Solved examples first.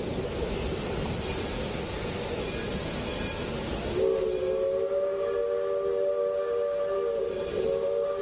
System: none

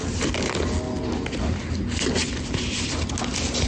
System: none